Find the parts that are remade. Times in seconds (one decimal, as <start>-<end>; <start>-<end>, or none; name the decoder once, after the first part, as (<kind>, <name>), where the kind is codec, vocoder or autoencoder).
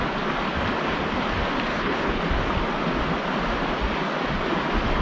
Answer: 1.7-2.2 (codec, HILCodec)